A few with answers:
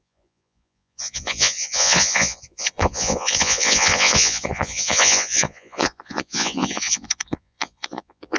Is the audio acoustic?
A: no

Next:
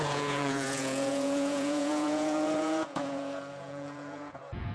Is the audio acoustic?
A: no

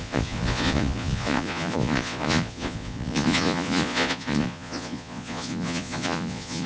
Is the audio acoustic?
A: no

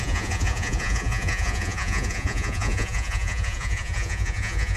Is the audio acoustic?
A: no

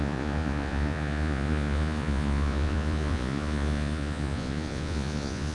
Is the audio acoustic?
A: no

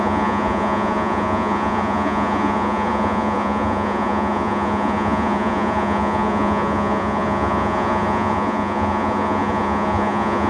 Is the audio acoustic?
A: no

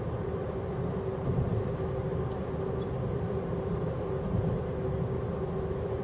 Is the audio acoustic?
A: yes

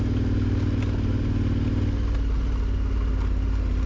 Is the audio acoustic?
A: yes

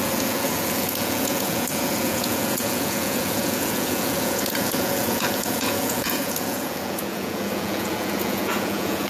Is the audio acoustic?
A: no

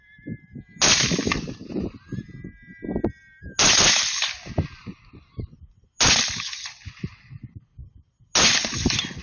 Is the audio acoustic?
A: yes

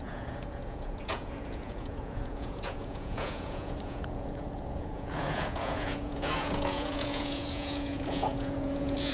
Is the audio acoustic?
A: no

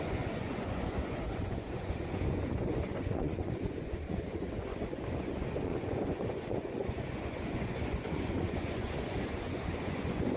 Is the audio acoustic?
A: no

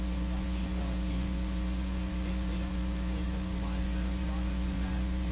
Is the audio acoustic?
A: no